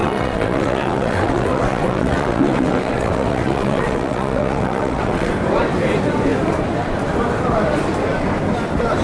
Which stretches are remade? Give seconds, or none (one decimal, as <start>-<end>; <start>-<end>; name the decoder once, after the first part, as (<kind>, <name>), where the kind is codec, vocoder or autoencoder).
0.0-5.3 (vocoder, WaveNeXt)